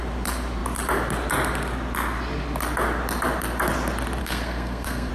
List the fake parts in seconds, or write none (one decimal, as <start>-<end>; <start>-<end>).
4.2-5.1